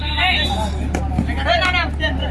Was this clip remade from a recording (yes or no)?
no